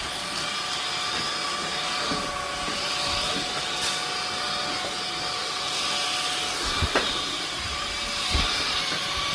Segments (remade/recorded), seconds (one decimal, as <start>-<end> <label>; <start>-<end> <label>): 0.0-9.3 recorded

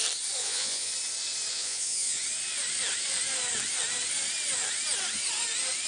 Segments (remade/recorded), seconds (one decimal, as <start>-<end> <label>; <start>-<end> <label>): 0.0-0.4 recorded; 0.4-0.9 remade; 0.9-1.5 recorded; 1.5-2.2 remade; 2.2-5.9 recorded

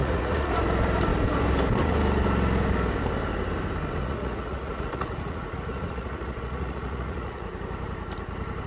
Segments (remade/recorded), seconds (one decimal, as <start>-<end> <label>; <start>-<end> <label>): 0.0-0.5 remade; 0.5-4.0 recorded; 4.0-7.5 remade; 7.5-8.7 recorded

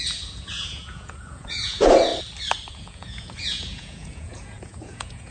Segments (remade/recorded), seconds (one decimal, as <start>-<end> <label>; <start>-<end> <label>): 0.0-2.1 remade; 2.1-2.7 recorded; 2.7-5.3 remade

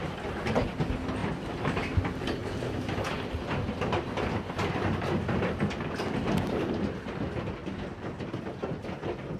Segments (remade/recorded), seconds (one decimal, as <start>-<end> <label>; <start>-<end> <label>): 0.0-1.2 recorded; 1.2-2.0 remade; 2.0-7.6 recorded; 7.6-8.3 remade; 8.3-9.4 recorded

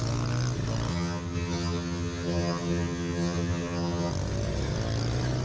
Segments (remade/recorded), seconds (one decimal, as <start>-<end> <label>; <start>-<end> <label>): 0.0-0.9 recorded; 0.9-4.1 remade; 4.1-5.4 recorded

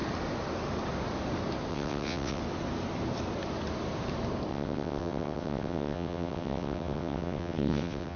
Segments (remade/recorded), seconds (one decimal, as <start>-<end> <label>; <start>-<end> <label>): 0.0-1.7 recorded; 1.7-2.4 remade; 2.4-4.5 recorded; 4.5-8.2 remade